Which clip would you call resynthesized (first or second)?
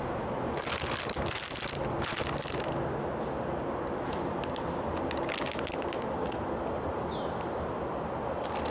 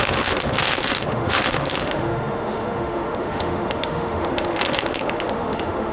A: second